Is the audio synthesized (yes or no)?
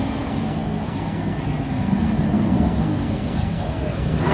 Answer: yes